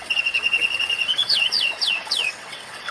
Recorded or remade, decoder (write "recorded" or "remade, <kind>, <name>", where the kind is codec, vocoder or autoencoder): remade, vocoder, WaveNeXt